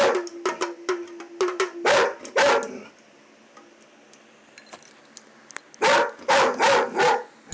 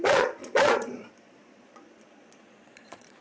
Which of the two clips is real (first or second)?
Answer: first